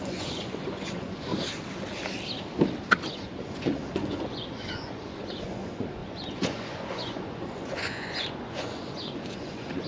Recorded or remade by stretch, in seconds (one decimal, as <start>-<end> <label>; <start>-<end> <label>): 0.0-1.3 remade; 1.3-3.1 recorded; 3.1-9.9 remade